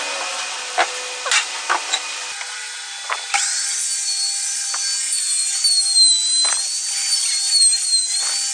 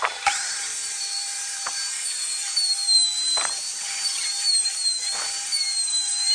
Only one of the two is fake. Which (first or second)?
second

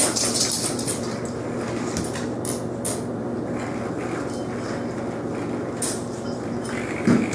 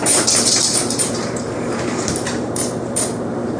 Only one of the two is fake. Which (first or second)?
second